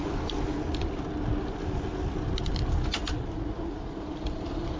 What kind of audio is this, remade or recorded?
recorded